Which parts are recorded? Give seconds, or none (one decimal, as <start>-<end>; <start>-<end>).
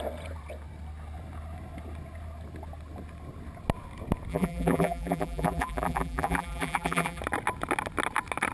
0.0-4.3; 7.2-8.5